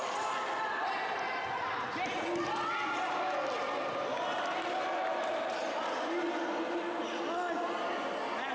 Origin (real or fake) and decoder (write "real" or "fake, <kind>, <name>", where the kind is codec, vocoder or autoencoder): real